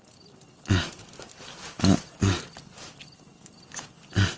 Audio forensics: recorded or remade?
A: recorded